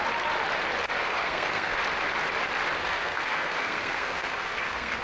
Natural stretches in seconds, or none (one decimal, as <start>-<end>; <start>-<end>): 0.0-1.0; 1.8-2.8